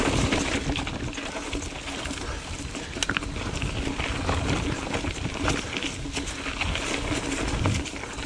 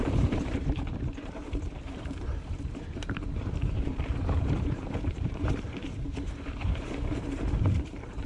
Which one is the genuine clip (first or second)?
first